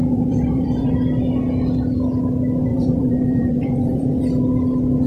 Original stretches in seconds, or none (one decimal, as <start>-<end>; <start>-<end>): 0.9-2.7; 4.2-5.1